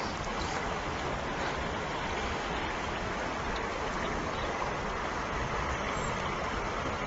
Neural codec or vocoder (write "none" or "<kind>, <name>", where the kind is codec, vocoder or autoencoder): none